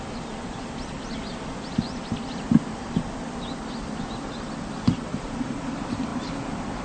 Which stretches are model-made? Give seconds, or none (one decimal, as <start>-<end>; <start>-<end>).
none

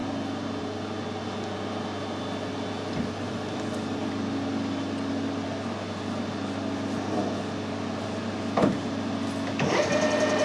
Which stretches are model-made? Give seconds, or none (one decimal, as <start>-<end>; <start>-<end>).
none

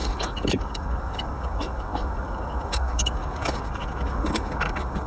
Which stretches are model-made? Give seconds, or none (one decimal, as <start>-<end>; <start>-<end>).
0.0-5.1

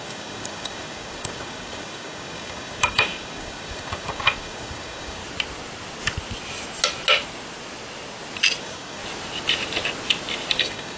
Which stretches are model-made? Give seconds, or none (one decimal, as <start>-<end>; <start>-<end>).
0.0-5.2; 8.6-9.0; 10.6-11.0